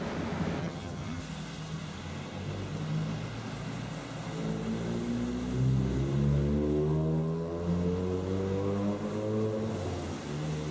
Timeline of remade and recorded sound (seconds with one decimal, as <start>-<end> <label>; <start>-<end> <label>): 0.0-0.6 recorded; 0.6-1.2 remade; 1.2-10.7 recorded